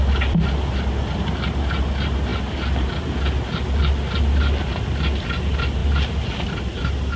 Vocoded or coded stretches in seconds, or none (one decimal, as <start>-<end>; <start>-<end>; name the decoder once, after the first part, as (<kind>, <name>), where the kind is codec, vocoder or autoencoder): none